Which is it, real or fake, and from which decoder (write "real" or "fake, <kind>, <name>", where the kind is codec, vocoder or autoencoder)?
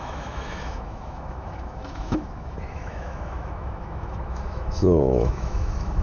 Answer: fake, autoencoder, DAC-VAE